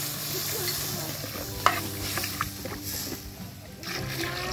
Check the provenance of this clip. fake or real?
real